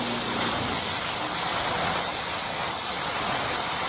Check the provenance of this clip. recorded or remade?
recorded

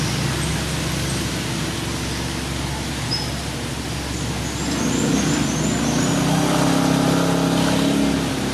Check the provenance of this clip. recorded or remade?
recorded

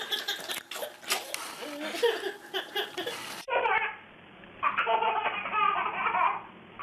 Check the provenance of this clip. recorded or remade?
recorded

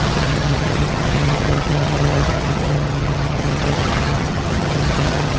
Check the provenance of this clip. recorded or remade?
remade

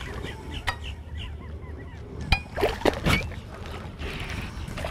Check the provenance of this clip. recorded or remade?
recorded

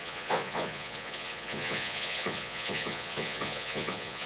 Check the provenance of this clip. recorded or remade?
remade